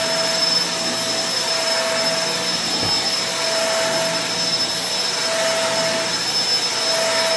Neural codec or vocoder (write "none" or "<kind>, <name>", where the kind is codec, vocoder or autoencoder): none